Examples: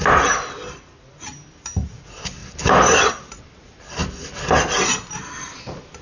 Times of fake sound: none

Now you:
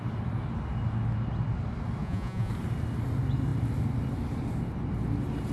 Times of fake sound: 2.0-2.5 (vocoder, Vocos)

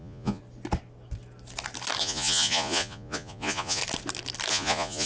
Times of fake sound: 0.0-0.4 (vocoder, Vocos); 2.0-3.8; 4.5-5.1

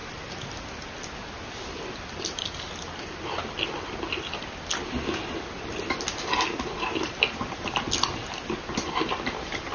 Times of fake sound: none

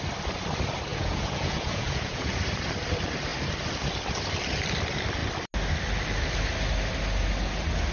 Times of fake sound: 0.9-2.3 (vocoder, Vocos)

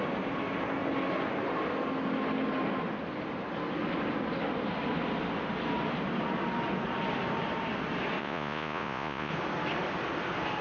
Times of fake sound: 8.2-9.3 (vocoder, Vocos)